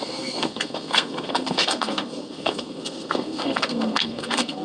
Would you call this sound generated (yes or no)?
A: yes